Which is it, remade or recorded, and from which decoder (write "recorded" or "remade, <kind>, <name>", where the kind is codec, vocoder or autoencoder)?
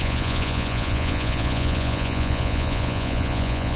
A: remade, vocoder, Vocos